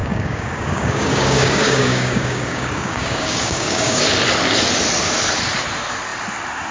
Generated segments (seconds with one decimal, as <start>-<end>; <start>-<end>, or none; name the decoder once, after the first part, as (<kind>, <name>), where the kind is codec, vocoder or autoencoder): 0.0-4.0 (codec, DAC)